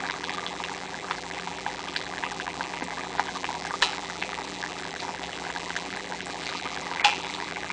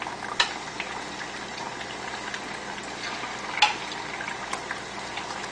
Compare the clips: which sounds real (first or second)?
second